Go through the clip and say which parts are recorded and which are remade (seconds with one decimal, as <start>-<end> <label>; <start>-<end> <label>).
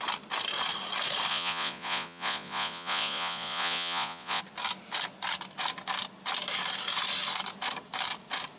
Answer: 0.0-1.3 recorded; 1.3-4.4 remade; 4.4-8.6 recorded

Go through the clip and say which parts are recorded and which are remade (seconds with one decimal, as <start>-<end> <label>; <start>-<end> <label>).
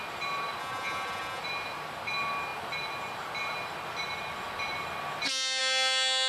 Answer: 0.0-0.6 recorded; 0.6-1.4 remade; 1.4-6.3 recorded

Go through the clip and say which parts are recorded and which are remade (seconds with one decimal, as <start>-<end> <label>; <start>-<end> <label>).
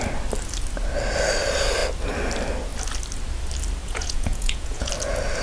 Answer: 0.0-3.8 recorded; 3.8-4.9 remade; 4.9-5.4 recorded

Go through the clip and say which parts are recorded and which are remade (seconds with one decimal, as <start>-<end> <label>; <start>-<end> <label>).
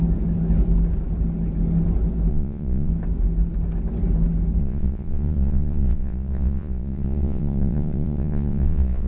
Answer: 0.0-2.3 recorded; 2.3-2.9 remade; 2.9-4.6 recorded; 4.6-9.1 remade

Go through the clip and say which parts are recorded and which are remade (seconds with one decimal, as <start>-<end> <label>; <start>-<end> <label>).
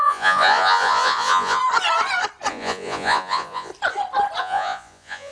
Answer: 0.0-1.6 remade; 1.6-2.5 recorded; 2.5-3.7 remade; 3.7-4.4 recorded; 4.4-5.3 remade